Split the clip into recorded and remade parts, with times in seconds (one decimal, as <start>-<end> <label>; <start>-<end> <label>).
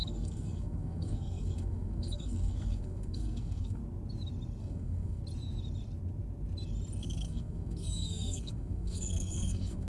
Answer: 0.0-3.8 remade; 3.8-4.6 recorded; 4.6-5.2 remade; 5.2-7.0 recorded; 7.0-9.9 remade